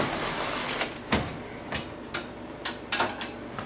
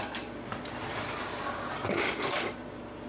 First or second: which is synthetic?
second